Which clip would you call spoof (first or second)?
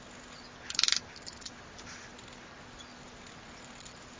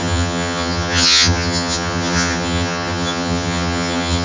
second